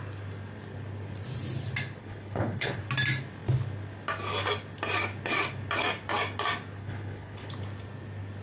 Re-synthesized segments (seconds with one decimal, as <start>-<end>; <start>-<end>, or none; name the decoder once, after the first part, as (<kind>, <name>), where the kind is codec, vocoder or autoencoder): 2.0-2.8 (codec, HILCodec); 6.8-7.5